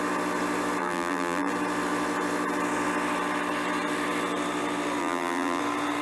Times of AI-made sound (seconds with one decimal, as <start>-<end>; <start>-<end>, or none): 0.8-1.5; 5.0-5.6